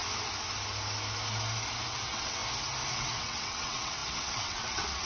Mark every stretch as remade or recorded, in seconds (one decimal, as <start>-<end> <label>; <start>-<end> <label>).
0.0-1.9 recorded; 1.9-2.4 remade; 2.4-2.9 recorded; 2.9-5.1 remade